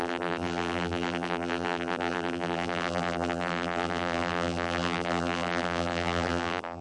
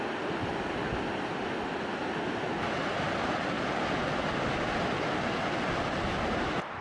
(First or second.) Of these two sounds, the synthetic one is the first